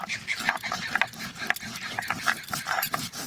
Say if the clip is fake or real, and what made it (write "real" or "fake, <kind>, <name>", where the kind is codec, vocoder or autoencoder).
fake, vocoder, BigVGAN v2